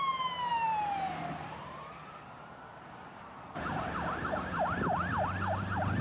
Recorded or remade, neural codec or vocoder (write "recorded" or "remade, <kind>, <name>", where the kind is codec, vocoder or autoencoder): remade, vocoder, BigVGAN v2